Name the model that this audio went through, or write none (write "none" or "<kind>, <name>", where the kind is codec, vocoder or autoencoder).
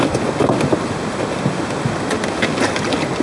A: none